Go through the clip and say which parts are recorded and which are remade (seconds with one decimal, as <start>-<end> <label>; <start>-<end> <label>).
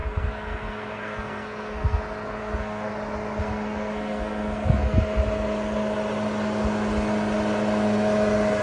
0.0-2.0 remade; 2.0-2.4 recorded; 2.4-2.9 remade; 2.9-3.4 recorded; 3.4-5.0 remade; 5.0-8.6 recorded